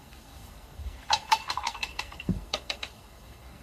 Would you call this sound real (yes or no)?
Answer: no